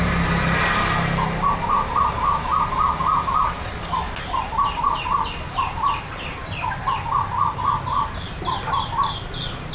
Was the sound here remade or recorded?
recorded